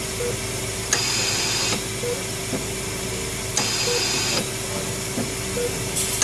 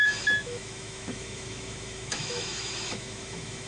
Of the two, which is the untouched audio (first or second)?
first